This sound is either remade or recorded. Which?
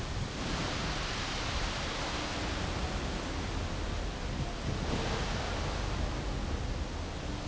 recorded